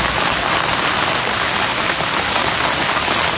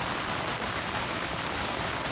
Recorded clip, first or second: first